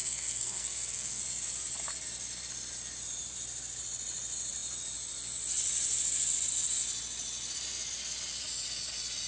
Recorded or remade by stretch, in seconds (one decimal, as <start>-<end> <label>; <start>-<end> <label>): 0.0-1.2 remade; 1.2-9.3 recorded

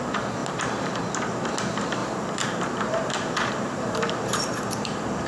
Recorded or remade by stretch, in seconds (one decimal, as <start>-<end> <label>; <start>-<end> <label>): 0.0-0.4 recorded; 0.4-1.0 remade; 1.0-2.0 recorded; 2.0-5.3 remade

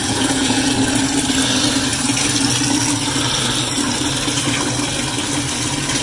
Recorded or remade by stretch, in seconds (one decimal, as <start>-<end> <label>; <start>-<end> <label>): 0.0-0.7 remade; 0.7-6.0 recorded

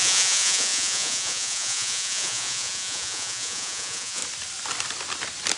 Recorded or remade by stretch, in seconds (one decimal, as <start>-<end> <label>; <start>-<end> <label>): 0.0-4.2 remade; 4.2-5.6 recorded